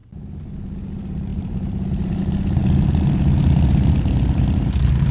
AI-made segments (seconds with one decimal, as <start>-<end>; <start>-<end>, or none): 1.3-2.2